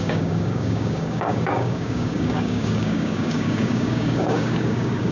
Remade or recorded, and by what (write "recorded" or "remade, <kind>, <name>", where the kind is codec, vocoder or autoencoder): remade, codec, DAC